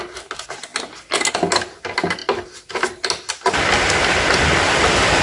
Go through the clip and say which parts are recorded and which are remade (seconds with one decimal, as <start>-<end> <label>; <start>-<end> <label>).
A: 0.0-5.2 recorded